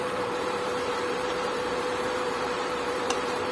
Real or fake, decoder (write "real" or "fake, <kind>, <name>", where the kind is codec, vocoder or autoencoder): fake, vocoder, BigVGAN v2